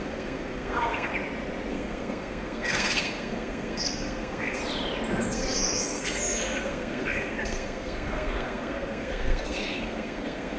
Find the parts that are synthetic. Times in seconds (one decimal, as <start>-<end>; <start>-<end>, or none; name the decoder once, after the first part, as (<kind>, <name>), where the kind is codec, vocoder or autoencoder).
0.0-1.1 (codec, SNAC); 1.7-4.6; 5.2-10.6